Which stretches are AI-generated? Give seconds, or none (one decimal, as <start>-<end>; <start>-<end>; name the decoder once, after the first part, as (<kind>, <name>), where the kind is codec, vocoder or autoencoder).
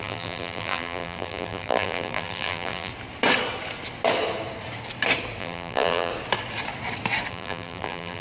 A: 0.0-2.9 (vocoder, BigVGAN v2); 5.4-6.1; 7.3-8.2